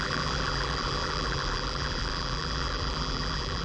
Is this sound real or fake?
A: fake